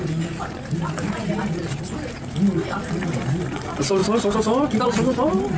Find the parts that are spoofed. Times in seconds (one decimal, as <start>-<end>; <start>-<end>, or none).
none